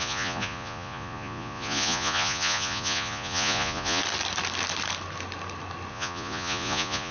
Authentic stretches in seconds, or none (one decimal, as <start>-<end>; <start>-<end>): 4.0-5.9